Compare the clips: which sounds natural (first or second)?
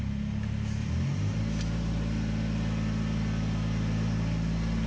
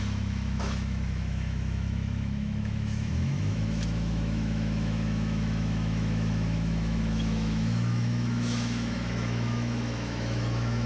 first